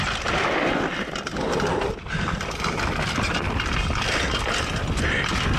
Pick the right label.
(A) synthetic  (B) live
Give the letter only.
B